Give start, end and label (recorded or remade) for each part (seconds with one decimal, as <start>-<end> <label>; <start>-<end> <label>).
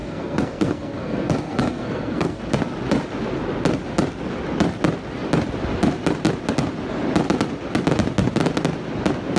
0.0-2.4 remade; 2.4-9.4 recorded